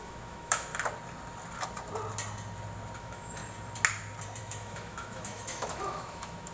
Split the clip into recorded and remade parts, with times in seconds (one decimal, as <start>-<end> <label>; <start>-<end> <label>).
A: 0.0-0.7 remade; 0.7-3.0 recorded; 3.0-3.4 remade; 3.4-4.4 recorded; 4.4-6.5 remade